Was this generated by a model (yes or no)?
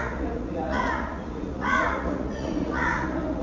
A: yes